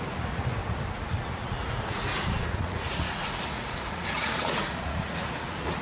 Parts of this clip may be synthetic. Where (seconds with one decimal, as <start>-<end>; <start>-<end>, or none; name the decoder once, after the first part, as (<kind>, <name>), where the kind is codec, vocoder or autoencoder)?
0.0-0.6 (vocoder, Vocos); 1.1-5.8